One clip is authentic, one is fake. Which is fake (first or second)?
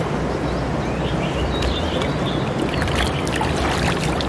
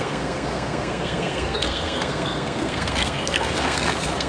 second